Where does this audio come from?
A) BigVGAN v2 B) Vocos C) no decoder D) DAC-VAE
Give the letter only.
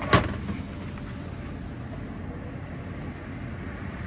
C